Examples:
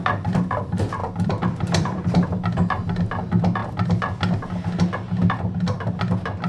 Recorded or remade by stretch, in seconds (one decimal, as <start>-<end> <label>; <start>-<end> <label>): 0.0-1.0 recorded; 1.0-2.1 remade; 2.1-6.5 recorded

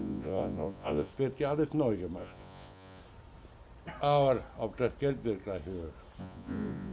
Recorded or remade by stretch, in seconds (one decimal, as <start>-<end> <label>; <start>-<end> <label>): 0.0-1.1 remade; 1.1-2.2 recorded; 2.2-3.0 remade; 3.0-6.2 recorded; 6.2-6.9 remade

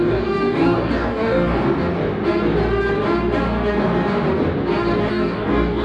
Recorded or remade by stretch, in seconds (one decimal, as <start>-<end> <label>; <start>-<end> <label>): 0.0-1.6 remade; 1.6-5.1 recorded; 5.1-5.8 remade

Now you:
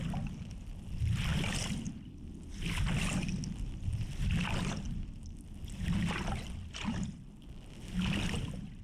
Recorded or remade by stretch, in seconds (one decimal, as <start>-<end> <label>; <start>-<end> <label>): 0.0-8.8 recorded

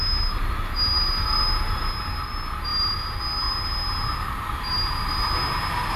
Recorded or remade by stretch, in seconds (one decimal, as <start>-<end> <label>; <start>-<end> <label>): 0.0-6.0 recorded